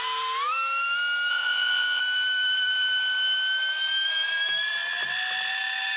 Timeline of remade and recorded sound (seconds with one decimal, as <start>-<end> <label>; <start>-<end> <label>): 0.0-1.3 recorded; 1.3-2.0 remade; 2.0-6.0 recorded